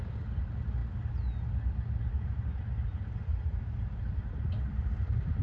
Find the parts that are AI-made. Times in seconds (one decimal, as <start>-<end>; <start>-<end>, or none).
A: none

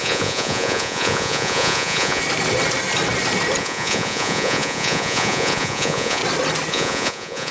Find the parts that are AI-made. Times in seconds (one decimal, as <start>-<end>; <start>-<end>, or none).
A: 0.0-2.2; 3.6-6.2; 6.7-7.5

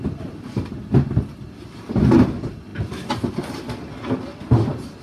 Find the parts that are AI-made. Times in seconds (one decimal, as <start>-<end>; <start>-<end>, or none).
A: none

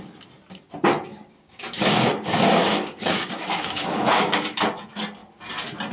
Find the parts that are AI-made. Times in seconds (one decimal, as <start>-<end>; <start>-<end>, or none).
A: 1.1-4.6

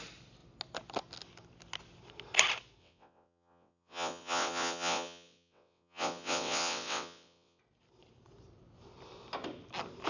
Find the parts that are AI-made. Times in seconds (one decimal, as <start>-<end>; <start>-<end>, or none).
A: 2.8-7.6

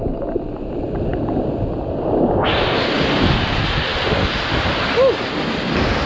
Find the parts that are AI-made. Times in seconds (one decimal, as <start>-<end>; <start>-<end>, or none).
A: none

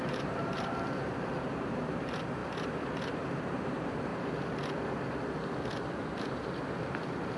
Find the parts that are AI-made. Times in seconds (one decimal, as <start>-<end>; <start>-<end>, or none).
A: 0.0-2.4; 3.2-4.1; 6.2-7.4

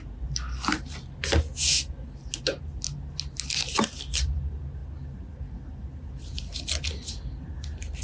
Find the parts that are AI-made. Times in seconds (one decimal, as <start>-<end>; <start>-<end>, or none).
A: none